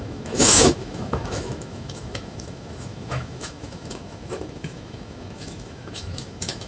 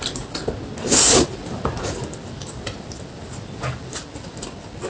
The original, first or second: second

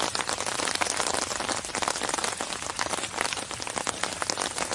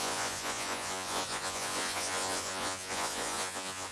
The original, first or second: first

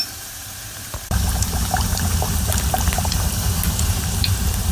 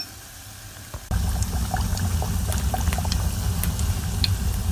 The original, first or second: second